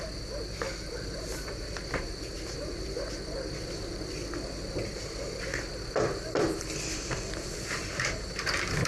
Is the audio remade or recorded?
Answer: recorded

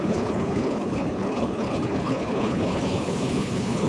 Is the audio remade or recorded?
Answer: remade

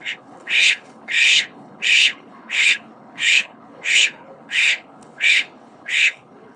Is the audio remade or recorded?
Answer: remade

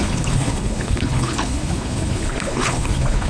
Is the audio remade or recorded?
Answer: remade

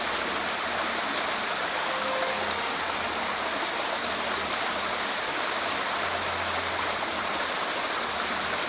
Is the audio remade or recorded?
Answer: recorded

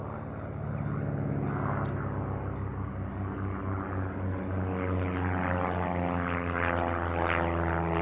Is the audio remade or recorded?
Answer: recorded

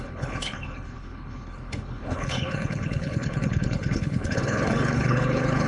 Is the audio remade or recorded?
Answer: remade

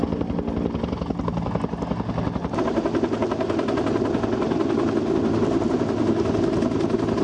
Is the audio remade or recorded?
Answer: recorded